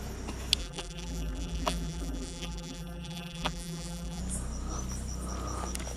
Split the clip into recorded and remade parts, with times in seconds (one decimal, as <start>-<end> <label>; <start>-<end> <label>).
0.0-0.6 recorded; 0.6-4.2 remade; 4.2-6.0 recorded